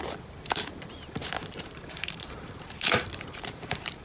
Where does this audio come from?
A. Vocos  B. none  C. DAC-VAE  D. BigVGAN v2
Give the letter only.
D